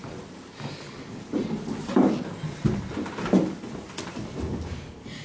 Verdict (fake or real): real